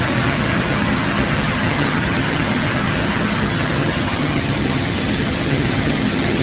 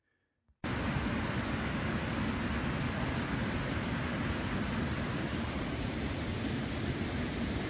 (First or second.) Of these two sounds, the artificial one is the first